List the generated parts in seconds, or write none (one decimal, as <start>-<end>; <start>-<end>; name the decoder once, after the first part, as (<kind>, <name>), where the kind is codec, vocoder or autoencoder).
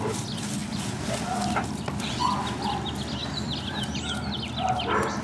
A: none